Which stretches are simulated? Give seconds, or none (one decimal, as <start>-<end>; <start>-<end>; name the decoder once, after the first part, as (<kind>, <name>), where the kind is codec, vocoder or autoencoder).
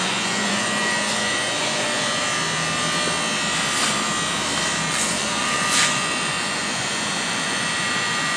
0.0-2.2 (vocoder, Vocos); 4.9-8.4